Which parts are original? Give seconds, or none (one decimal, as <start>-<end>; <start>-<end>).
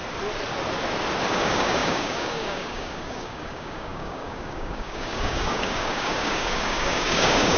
0.0-1.3